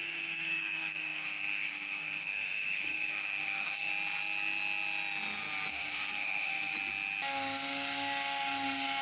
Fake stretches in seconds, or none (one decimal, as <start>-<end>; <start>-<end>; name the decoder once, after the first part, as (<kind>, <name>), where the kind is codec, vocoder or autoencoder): 0.0-3.9 (codec, SNAC); 5.7-6.7